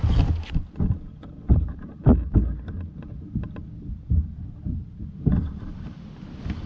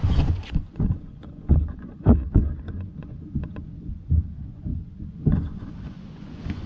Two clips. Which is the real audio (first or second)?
first